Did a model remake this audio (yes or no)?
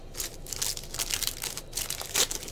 no